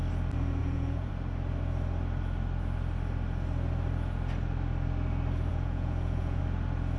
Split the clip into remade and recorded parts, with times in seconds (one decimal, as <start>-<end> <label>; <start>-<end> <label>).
0.0-0.6 recorded; 0.6-1.1 remade; 1.1-5.5 recorded; 5.5-6.4 remade; 6.4-7.0 recorded